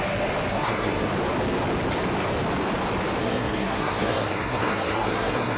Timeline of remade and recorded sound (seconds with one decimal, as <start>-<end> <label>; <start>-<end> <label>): 0.0-0.5 recorded; 0.5-1.1 remade; 1.1-3.2 recorded; 3.2-5.6 remade